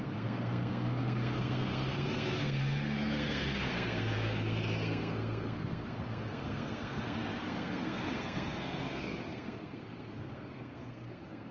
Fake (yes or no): yes